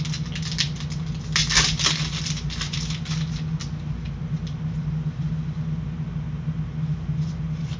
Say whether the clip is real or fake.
real